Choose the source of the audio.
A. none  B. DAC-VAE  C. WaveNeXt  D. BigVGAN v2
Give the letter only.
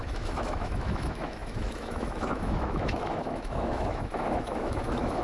B